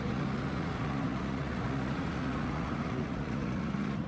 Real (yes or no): no